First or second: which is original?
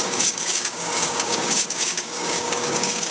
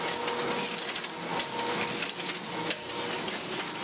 second